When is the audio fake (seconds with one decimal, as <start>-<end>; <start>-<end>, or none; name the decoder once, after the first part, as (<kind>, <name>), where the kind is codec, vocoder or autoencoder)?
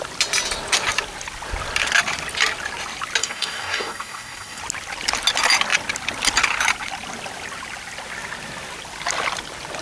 3.2-4.6 (codec, DAC)